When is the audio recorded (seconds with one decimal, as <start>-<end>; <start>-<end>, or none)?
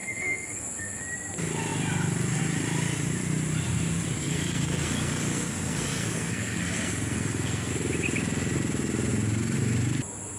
1.0-4.2; 7.7-10.4